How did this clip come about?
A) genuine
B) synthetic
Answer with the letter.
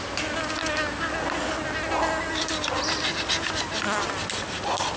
A